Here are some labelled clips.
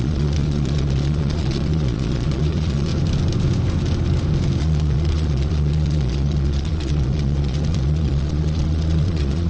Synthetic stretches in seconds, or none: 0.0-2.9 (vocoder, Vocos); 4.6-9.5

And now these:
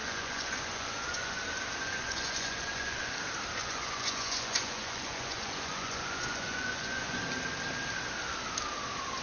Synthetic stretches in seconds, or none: 0.0-1.4 (vocoder, Vocos); 1.8-3.1; 3.6-7.2

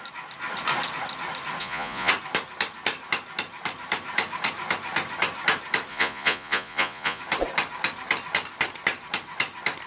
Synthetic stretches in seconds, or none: 1.6-2.1 (vocoder, Vocos); 5.9-7.2

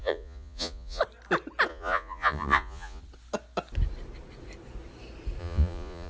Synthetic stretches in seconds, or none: 0.0-1.0 (vocoder, Vocos); 1.7-3.0; 5.4-6.1

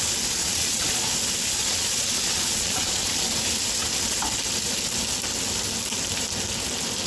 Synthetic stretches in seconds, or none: 0.4-1.1 (vocoder, Vocos); 1.6-3.2

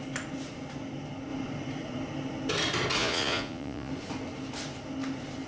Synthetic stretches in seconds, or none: 3.0-3.9 (vocoder, Vocos)